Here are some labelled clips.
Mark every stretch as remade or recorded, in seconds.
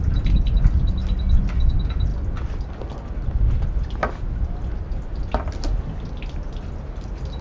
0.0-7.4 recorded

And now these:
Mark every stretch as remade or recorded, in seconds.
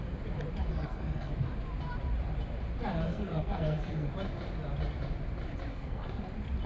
0.0-0.7 recorded; 0.7-1.3 remade; 1.3-3.1 recorded; 3.1-4.1 remade; 4.1-5.7 recorded; 5.7-6.2 remade; 6.2-6.7 recorded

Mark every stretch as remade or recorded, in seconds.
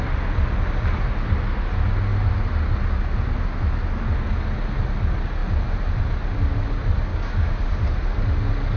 0.0-7.1 recorded; 7.1-7.7 remade; 7.7-8.8 recorded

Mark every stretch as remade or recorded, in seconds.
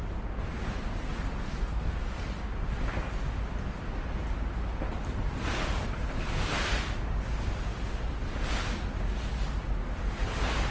0.0-10.7 recorded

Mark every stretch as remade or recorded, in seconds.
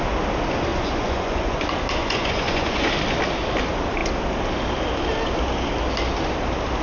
0.0-0.7 recorded; 0.7-1.6 remade; 1.6-2.0 recorded; 2.0-2.8 remade; 2.8-6.8 recorded